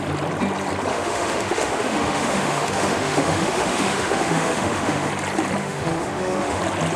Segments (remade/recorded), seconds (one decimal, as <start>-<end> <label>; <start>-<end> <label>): 0.0-0.9 recorded; 0.9-5.1 remade; 5.1-5.6 recorded; 5.6-6.6 remade; 6.6-7.0 recorded